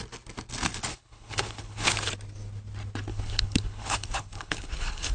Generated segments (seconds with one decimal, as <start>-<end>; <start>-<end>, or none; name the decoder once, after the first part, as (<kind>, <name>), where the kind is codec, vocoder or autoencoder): 0.9-2.1 (codec, HILCodec); 3.1-5.1

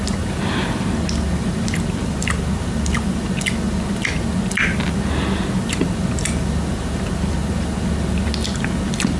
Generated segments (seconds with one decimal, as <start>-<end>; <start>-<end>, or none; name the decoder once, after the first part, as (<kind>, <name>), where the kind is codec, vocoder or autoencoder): none

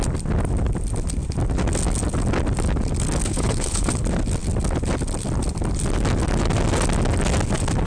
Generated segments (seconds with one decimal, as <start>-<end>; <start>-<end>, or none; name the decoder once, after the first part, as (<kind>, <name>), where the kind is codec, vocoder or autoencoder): 3.2-3.9 (codec, HILCodec)

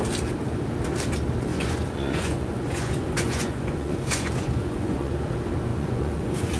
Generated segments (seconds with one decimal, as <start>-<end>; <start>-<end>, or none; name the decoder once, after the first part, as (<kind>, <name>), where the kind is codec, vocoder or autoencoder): 1.5-5.2 (vocoder, Vocos); 5.7-6.6

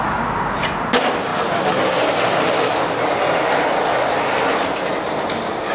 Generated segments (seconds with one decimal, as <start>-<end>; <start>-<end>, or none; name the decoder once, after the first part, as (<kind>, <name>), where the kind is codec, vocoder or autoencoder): none

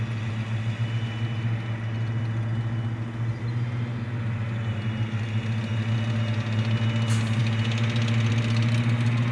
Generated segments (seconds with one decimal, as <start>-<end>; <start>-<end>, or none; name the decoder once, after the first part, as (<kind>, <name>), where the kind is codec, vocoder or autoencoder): none

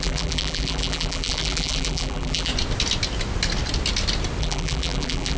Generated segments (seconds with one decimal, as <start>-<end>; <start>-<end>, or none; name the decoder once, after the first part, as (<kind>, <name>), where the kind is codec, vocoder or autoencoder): 0.0-2.5 (vocoder, BigVGAN v2); 4.4-5.4

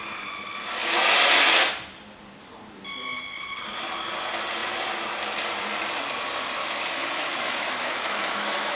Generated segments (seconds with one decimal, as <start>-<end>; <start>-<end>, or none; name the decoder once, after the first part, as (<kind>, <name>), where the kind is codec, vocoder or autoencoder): 6.6-8.8 (autoencoder, DAC-VAE)